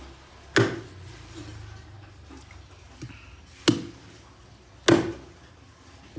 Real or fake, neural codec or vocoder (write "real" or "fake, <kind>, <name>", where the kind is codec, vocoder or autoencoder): real